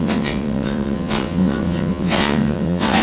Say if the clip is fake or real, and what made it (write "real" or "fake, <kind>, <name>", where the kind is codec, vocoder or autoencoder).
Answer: fake, vocoder, WaveNeXt